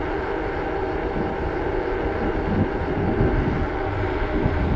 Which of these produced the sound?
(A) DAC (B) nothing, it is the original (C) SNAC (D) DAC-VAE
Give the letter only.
B